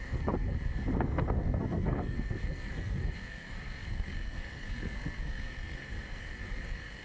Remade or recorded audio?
remade